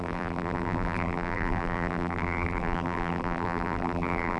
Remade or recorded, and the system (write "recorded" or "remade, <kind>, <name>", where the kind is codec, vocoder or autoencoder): remade, vocoder, BigVGAN v2